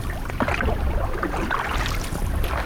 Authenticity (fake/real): real